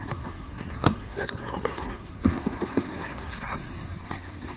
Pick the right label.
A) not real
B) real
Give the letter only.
A